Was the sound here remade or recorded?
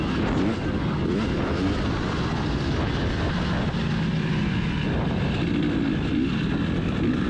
recorded